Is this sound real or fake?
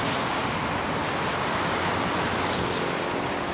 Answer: real